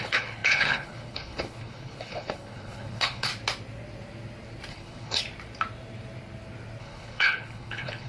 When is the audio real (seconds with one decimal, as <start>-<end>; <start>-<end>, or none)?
3.3-4.7; 5.2-6.8